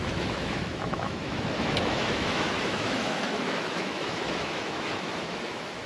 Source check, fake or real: fake